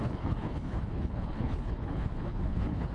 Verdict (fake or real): fake